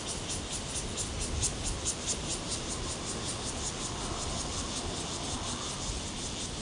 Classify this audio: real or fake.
real